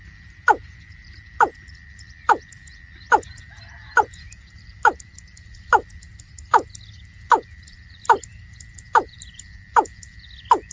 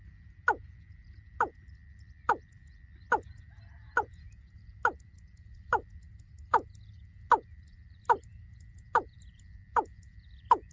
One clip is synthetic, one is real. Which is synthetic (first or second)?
first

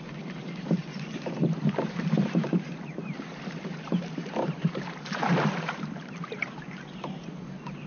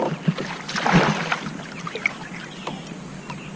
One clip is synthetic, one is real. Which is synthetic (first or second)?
first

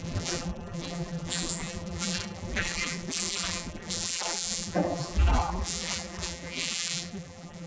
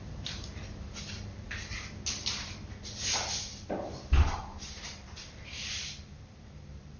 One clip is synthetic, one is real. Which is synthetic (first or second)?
first